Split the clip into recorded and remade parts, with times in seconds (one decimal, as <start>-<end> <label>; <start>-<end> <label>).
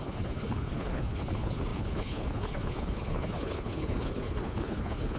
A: 0.0-5.2 remade